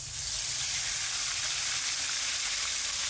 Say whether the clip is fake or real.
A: real